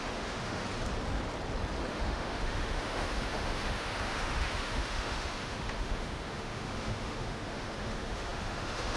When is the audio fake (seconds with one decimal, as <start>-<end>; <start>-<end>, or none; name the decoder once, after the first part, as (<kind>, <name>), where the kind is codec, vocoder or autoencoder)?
0.0-0.6 (autoencoder, DAC-VAE); 1.9-9.0